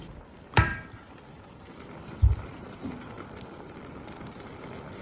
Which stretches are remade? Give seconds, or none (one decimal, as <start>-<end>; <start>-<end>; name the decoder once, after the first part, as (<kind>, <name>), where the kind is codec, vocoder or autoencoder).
0.0-0.7 (vocoder, BigVGAN v2); 1.8-2.5; 4.6-5.0